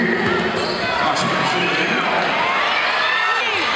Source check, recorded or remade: recorded